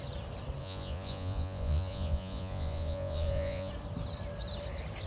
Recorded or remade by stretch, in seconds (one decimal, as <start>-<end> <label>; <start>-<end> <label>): 0.0-0.6 recorded; 0.6-3.7 remade; 3.7-5.1 recorded